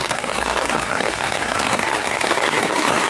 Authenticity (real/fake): fake